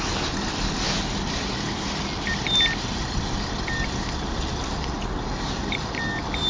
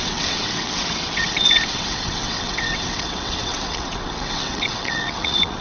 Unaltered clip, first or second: first